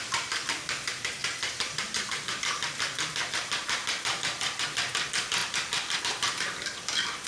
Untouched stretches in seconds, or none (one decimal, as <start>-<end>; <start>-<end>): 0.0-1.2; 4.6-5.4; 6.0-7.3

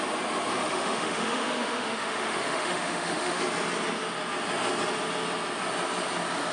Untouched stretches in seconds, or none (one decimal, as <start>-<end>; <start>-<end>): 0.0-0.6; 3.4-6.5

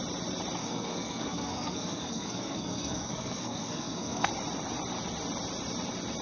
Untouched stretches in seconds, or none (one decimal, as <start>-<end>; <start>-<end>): 0.0-0.6; 4.3-6.2

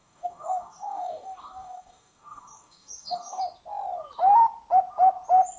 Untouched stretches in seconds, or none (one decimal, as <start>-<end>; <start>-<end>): 3.4-5.6

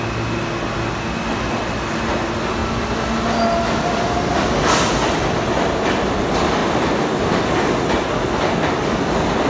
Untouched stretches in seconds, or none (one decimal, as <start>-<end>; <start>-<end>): 0.0-9.5

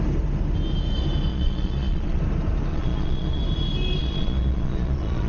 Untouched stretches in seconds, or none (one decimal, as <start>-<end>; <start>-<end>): 0.0-1.3; 2.2-2.7; 3.4-4.0